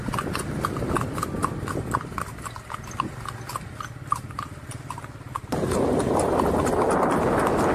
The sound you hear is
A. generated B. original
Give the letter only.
B